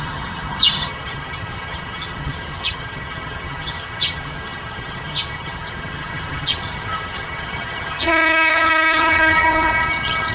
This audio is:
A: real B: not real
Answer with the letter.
B